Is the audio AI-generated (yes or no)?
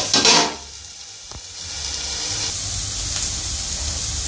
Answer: no